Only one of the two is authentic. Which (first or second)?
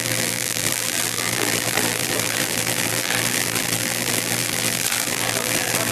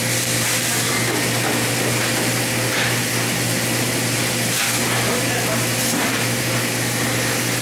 second